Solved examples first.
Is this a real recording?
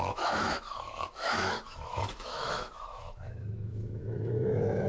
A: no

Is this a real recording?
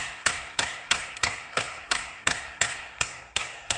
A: no